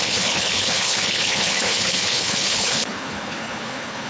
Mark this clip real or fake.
fake